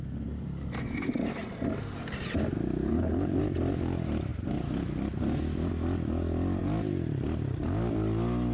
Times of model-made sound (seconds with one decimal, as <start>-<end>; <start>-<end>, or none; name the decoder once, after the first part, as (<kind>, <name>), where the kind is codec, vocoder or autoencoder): 2.9-3.4 (codec, HILCodec)